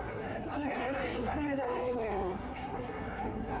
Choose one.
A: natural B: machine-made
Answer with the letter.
B